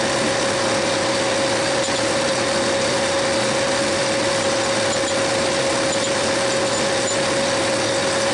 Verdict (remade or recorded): recorded